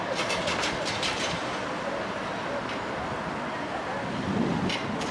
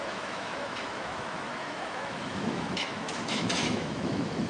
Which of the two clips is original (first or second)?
first